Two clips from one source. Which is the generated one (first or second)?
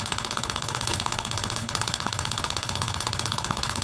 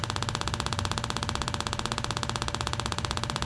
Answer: first